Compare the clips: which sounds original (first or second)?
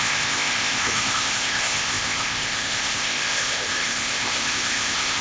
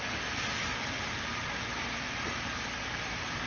second